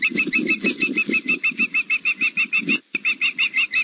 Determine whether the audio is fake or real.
real